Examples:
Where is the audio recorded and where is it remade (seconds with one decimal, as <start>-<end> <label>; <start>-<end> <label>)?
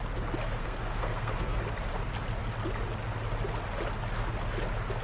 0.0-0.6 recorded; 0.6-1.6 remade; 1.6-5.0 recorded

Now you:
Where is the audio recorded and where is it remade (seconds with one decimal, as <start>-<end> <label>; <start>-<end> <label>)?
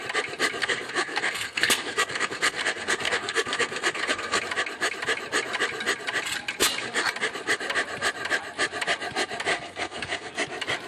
0.0-0.6 recorded; 0.6-4.4 remade; 4.4-9.5 recorded; 9.5-10.3 remade; 10.3-10.9 recorded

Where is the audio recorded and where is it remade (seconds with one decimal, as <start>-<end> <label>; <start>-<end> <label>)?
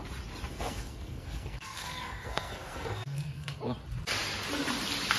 0.0-0.5 recorded; 0.5-3.6 remade; 3.6-5.2 recorded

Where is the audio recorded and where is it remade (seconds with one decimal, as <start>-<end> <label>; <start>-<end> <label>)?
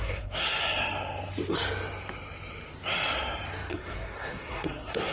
0.0-0.6 remade; 0.6-3.7 recorded; 3.7-5.1 remade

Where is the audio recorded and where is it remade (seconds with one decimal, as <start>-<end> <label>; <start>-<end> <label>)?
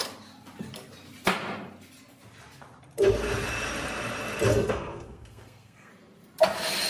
0.0-4.5 recorded; 4.5-5.9 remade; 5.9-6.9 recorded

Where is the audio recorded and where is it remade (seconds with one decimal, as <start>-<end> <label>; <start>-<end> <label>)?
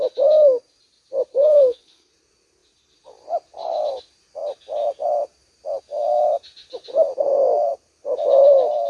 0.0-1.3 recorded; 1.3-2.1 remade; 2.1-8.9 recorded